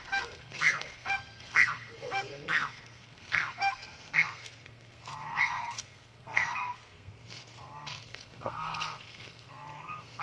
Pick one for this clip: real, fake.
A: fake